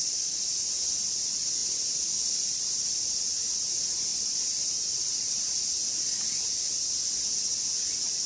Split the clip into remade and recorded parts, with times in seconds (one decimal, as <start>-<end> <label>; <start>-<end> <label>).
0.0-4.1 recorded; 4.1-5.9 remade; 5.9-8.3 recorded